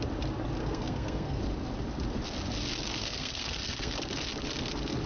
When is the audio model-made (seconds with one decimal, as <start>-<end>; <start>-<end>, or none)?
0.6-1.4; 3.0-3.9